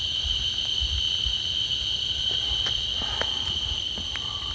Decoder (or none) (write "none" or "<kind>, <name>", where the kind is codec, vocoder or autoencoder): none